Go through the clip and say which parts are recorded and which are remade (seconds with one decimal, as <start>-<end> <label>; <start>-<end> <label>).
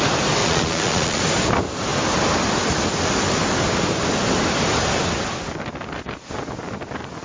0.0-0.4 recorded; 0.4-1.2 remade; 1.2-7.2 recorded